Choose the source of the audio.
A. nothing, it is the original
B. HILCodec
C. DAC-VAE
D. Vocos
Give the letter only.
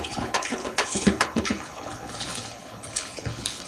B